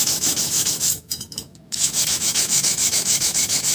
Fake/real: fake